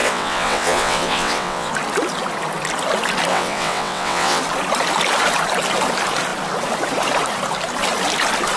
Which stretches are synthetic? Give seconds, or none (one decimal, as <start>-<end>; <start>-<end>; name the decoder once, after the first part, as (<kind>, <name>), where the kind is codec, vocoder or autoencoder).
0.0-1.7 (vocoder, WaveNeXt); 3.3-4.4